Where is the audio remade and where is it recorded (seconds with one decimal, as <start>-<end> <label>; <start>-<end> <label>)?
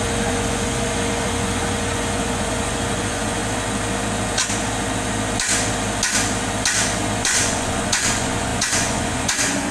0.0-3.4 remade; 3.4-7.2 recorded; 7.2-9.7 remade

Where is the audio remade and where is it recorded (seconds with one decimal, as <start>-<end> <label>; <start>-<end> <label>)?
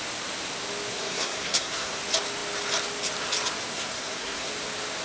0.0-0.9 recorded; 0.9-2.0 remade; 2.0-3.7 recorded; 3.7-4.5 remade; 4.5-5.0 recorded